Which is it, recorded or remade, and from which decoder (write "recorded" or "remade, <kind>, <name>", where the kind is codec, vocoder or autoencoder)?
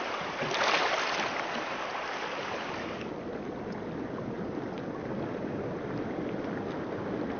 recorded